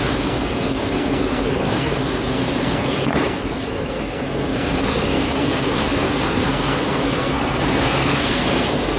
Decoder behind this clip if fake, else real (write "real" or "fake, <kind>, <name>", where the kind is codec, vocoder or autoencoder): fake, codec, SNAC